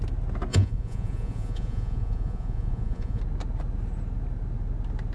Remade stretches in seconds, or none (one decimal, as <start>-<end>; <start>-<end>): 0.5-3.2